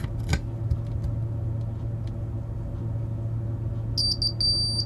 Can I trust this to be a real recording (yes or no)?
yes